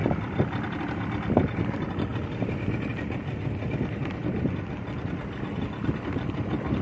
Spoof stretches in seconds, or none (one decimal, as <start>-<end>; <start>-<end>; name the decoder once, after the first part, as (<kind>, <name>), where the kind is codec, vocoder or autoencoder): 1.0-2.1 (vocoder, BigVGAN v2); 3.2-6.8